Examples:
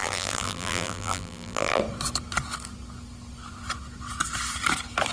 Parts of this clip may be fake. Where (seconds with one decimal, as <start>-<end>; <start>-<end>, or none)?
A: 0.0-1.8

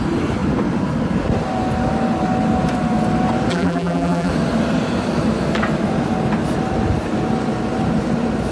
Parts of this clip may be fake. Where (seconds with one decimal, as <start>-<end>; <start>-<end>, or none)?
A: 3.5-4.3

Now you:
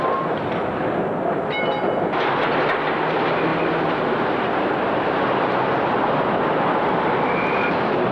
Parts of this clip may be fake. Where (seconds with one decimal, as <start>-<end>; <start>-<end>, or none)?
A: none

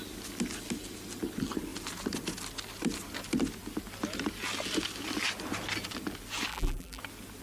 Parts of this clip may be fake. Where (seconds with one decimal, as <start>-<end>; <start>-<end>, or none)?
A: 6.5-7.0

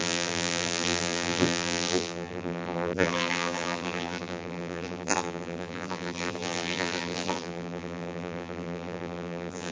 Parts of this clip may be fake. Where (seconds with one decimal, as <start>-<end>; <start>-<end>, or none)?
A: 0.0-9.7